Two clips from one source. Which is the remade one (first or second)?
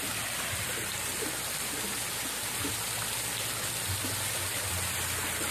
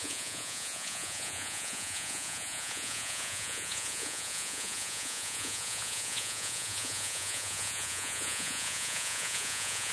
second